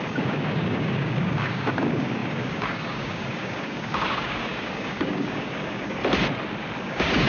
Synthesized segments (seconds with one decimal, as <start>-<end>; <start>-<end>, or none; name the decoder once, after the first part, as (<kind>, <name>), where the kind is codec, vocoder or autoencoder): 0.0-6.0 (codec, DAC); 6.8-7.3